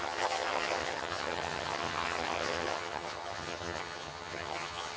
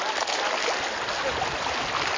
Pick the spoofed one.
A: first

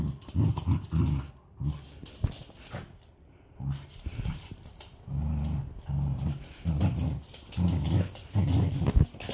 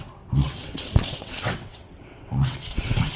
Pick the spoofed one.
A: second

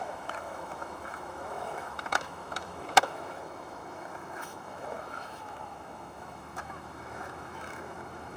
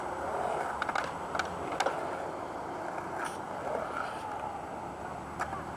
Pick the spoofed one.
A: first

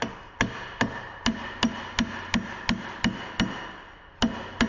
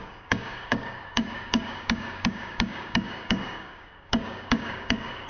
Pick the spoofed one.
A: second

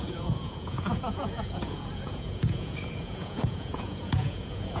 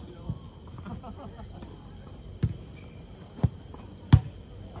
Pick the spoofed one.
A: first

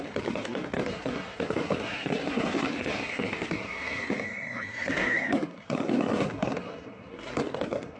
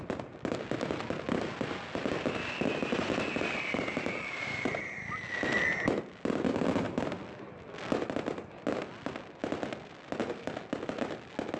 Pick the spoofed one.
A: first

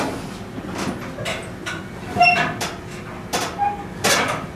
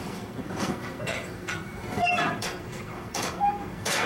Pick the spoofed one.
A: second